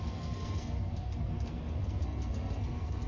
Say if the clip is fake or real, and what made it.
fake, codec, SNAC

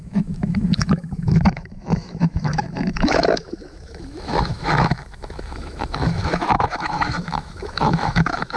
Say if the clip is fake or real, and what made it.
fake, autoencoder, DAC-VAE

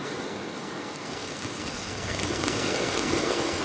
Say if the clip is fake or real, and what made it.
fake, codec, SNAC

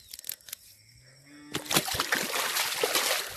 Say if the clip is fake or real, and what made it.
real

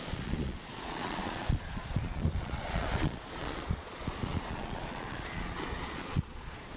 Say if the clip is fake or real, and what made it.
fake, vocoder, Vocos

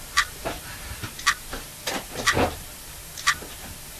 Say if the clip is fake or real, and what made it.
fake, vocoder, BigVGAN v2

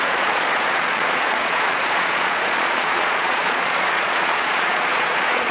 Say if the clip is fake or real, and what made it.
fake, vocoder, Vocos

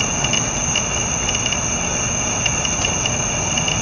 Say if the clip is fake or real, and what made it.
real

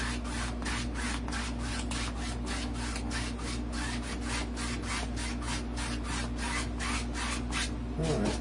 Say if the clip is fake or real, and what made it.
real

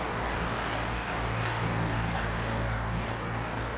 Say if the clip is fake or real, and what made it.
fake, codec, DAC